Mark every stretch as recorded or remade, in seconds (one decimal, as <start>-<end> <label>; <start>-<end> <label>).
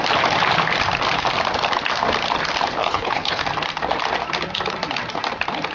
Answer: 0.0-2.8 recorded; 2.8-3.4 remade; 3.4-5.7 recorded